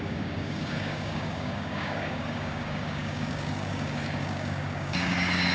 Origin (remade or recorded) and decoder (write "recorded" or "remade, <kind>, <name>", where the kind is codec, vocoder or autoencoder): remade, codec, DAC